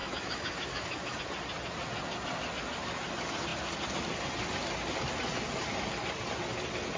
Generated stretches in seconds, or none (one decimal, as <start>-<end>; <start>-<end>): 0.0-1.2